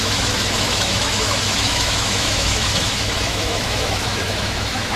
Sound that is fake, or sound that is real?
fake